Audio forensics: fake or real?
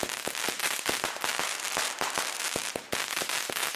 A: real